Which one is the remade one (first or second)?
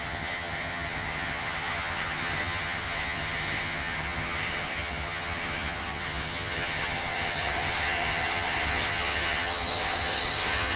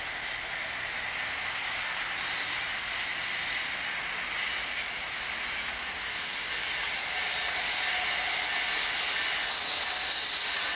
first